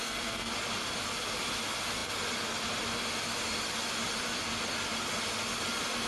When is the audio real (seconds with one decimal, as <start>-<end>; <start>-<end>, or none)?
0.5-6.1